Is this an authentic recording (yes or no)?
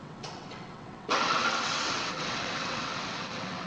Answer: no